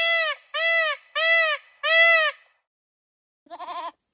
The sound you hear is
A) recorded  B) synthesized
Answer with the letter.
A